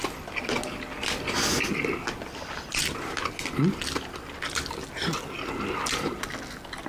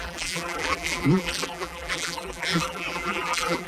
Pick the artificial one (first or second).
second